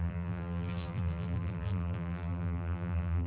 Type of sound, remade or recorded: remade